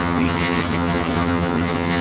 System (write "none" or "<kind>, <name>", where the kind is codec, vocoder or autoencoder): vocoder, HiFi-GAN